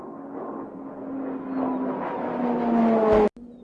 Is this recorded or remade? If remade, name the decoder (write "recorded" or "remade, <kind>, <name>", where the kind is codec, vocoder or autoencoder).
recorded